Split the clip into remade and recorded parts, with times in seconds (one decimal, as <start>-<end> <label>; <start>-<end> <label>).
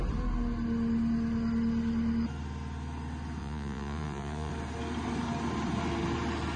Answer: 0.0-3.4 recorded; 3.4-4.5 remade; 4.5-6.6 recorded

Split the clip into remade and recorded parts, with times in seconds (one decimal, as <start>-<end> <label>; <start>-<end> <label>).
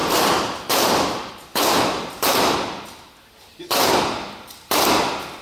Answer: 0.0-5.4 recorded